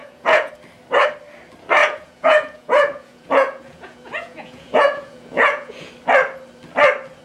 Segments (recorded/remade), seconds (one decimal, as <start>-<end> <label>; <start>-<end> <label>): 0.0-0.5 remade; 0.5-1.8 recorded; 1.8-5.9 remade; 5.9-7.2 recorded